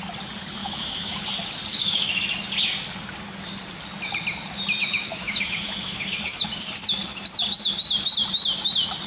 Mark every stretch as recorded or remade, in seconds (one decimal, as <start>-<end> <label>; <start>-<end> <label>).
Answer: 0.0-0.6 recorded; 0.6-1.2 remade; 1.2-1.7 recorded; 1.7-2.2 remade; 2.2-4.8 recorded; 4.8-6.6 remade; 6.6-9.1 recorded

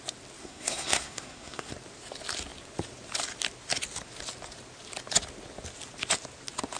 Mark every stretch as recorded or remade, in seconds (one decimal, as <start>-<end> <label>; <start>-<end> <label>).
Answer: 0.0-0.4 recorded; 0.4-1.7 remade; 1.7-6.8 recorded

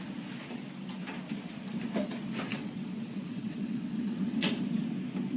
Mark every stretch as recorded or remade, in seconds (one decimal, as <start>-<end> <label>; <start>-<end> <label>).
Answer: 0.0-2.5 recorded; 2.5-4.5 remade; 4.5-5.4 recorded

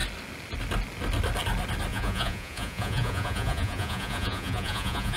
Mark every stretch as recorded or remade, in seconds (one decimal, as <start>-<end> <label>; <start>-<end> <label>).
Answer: 0.0-1.9 recorded; 1.9-5.2 remade